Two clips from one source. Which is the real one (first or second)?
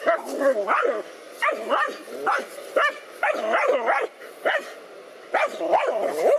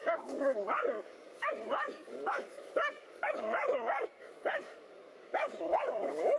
first